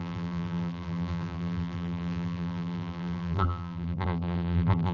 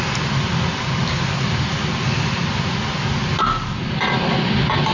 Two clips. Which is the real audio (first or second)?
second